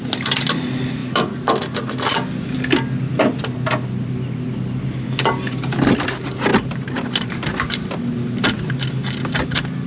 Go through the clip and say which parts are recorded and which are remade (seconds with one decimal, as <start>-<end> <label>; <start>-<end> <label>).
0.0-6.5 recorded; 6.5-8.0 remade; 8.0-9.9 recorded